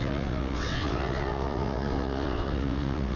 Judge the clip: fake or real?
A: fake